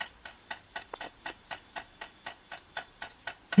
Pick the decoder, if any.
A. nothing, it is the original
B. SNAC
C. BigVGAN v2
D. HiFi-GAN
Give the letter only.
A